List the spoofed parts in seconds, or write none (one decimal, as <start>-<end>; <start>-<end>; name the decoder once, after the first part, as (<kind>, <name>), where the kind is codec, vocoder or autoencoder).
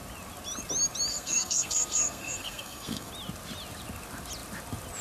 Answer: 1.1-3.1 (codec, SNAC)